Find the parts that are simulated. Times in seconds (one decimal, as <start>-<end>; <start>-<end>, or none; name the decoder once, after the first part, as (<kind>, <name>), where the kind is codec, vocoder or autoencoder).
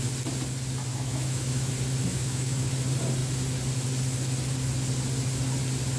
0.9-1.7 (autoencoder, DAC-VAE); 2.1-2.7